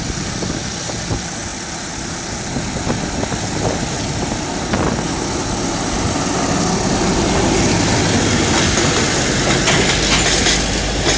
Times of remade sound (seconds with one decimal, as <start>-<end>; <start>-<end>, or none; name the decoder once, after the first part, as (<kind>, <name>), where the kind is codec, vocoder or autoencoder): none